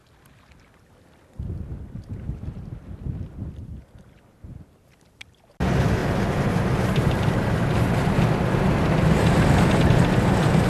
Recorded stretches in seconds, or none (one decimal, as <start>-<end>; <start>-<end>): 0.0-6.0; 7.4-10.7